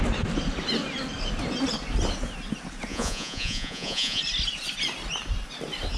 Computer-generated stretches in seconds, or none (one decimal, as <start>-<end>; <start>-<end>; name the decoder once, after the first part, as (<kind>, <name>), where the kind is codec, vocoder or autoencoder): 2.9-4.2 (vocoder, Vocos)